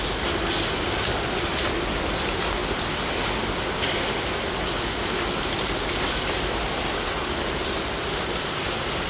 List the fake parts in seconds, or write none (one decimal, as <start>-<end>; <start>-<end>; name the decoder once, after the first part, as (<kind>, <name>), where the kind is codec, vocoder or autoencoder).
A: none